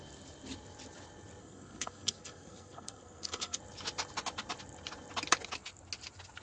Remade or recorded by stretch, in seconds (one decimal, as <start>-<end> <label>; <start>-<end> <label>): 0.0-1.4 recorded; 1.4-3.6 remade; 3.6-6.4 recorded